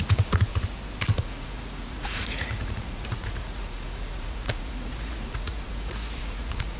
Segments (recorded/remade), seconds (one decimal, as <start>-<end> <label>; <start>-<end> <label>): 0.0-0.5 remade; 0.5-1.2 recorded; 1.2-6.8 remade